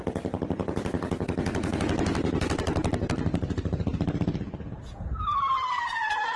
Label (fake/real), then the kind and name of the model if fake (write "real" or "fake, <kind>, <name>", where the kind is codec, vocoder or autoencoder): real